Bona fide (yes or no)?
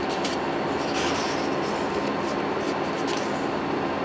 yes